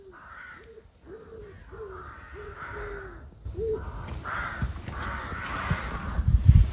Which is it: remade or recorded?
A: recorded